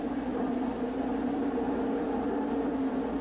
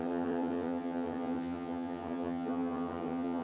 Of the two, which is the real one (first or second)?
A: first